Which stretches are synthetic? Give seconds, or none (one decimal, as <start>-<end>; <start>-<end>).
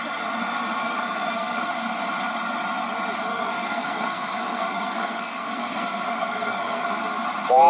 0.8-1.7; 3.3-7.0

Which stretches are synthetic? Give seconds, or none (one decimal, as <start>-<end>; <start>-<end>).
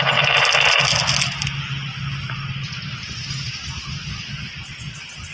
none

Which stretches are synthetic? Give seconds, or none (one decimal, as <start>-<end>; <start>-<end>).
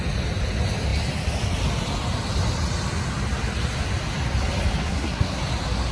4.8-5.4